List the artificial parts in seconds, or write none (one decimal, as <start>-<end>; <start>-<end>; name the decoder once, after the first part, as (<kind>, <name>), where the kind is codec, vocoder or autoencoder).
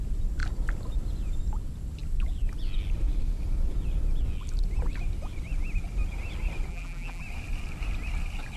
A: 6.7-7.2 (vocoder, BigVGAN v2)